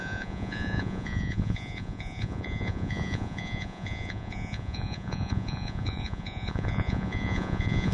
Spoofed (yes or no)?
yes